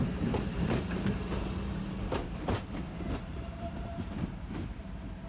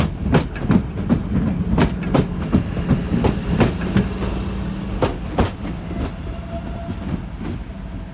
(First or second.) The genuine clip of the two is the second